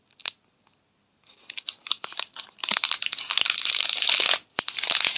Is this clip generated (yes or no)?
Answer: no